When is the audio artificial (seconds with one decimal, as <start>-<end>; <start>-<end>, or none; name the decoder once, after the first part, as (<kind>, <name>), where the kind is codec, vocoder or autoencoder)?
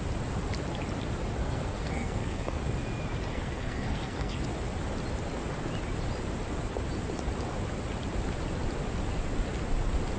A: 1.4-2.6 (codec, SNAC); 3.3-4.4